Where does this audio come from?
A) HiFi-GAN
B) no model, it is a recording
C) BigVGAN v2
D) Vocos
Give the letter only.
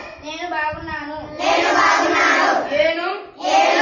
B